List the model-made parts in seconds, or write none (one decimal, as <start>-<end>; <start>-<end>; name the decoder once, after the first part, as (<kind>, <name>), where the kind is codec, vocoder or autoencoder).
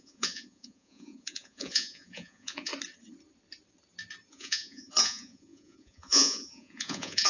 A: 0.0-2.7 (vocoder, Vocos); 4.3-7.3